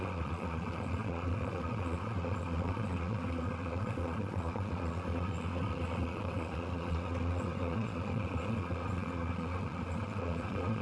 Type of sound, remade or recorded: remade